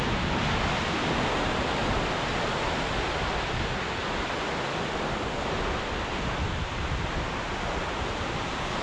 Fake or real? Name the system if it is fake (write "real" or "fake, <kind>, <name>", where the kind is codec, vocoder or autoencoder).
real